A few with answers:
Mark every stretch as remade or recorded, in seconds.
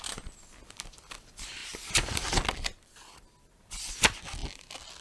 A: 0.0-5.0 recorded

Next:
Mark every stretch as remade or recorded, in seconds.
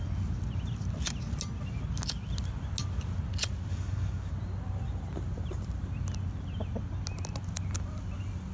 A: 0.0-3.7 recorded; 3.7-4.3 remade; 4.3-8.5 recorded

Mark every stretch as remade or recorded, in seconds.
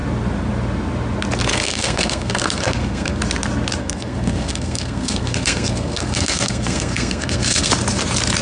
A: 0.0-1.5 recorded; 1.5-3.2 remade; 3.2-3.8 recorded; 3.8-7.7 remade; 7.7-8.4 recorded